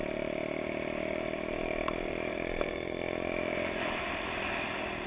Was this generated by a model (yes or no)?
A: yes